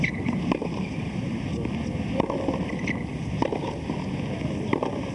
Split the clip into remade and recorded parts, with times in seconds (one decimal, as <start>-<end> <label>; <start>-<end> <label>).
0.0-1.5 remade; 1.5-4.6 recorded; 4.6-5.1 remade

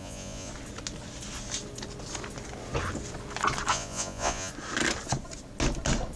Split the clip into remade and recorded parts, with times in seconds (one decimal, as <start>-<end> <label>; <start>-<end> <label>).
0.0-0.5 remade; 0.5-3.7 recorded; 3.7-4.5 remade; 4.5-6.2 recorded

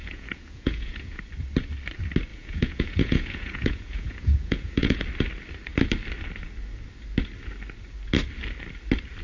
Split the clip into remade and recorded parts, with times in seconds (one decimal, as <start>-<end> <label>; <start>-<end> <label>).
0.0-1.2 remade; 1.2-2.3 recorded; 2.3-5.0 remade; 5.0-9.2 recorded

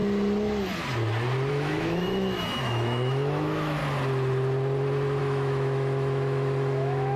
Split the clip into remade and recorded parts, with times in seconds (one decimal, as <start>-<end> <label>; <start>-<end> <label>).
0.0-1.5 recorded; 1.5-3.8 remade; 3.8-5.2 recorded; 5.2-7.2 remade

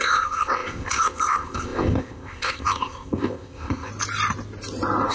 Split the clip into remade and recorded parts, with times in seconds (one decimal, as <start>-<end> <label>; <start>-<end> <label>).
0.0-3.9 remade; 3.9-5.1 recorded